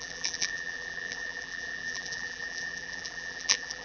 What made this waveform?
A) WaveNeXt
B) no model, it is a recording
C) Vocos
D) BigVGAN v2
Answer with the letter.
D